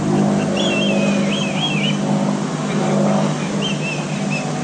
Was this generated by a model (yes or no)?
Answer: no